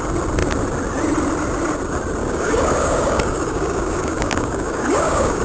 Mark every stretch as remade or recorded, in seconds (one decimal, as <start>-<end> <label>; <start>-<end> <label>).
0.0-2.2 recorded; 2.2-5.4 remade